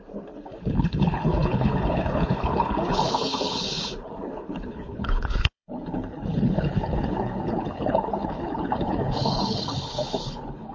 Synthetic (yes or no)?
yes